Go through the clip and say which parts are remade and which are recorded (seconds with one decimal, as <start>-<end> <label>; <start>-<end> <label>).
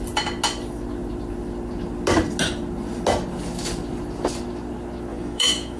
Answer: 0.0-5.1 recorded; 5.1-5.8 remade